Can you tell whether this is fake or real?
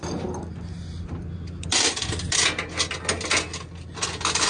real